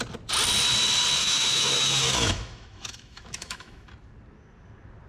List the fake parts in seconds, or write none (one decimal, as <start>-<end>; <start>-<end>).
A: 1.2-3.9